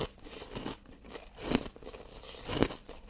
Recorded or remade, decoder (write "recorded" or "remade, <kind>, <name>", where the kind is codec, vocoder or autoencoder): recorded